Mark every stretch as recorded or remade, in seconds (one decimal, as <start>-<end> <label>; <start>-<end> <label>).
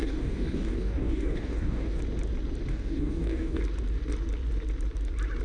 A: 0.0-2.0 remade; 2.0-2.7 recorded; 2.7-3.6 remade; 3.6-5.4 recorded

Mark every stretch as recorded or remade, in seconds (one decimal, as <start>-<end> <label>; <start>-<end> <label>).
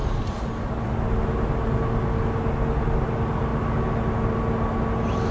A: 0.0-5.3 recorded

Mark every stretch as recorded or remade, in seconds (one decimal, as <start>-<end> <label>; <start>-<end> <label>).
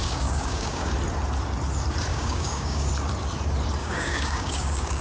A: 0.0-0.9 remade; 0.9-2.1 recorded; 2.1-2.9 remade; 2.9-3.8 recorded; 3.8-5.0 remade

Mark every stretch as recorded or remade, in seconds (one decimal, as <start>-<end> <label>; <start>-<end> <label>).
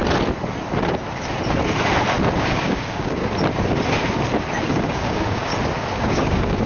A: 0.0-2.4 recorded; 2.4-3.2 remade; 3.2-4.6 recorded; 4.6-5.5 remade; 5.5-6.0 recorded; 6.0-6.7 remade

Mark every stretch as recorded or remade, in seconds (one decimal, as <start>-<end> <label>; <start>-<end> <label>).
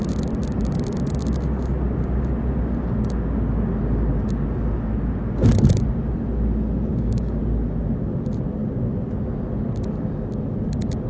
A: 0.0-6.9 recorded; 6.9-7.4 remade; 7.4-11.1 recorded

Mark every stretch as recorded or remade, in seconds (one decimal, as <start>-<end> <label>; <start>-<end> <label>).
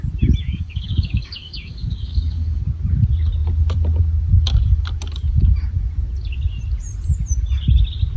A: 0.0-0.4 recorded; 0.4-2.6 remade; 2.6-8.2 recorded